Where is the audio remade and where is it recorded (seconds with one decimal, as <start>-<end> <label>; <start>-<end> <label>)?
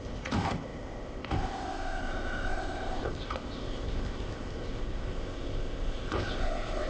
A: 0.0-6.9 remade